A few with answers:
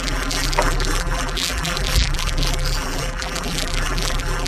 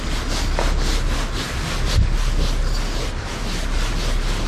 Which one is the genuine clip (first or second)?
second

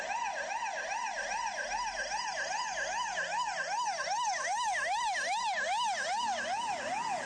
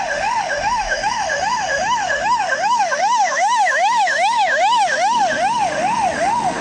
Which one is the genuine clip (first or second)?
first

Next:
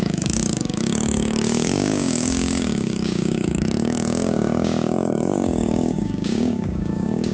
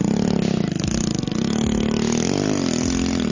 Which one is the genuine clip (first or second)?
second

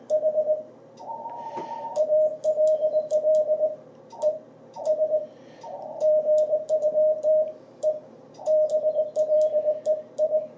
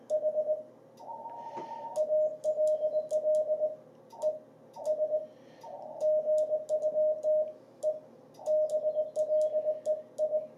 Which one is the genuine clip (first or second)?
second